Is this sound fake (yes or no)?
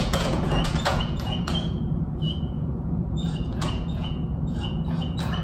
yes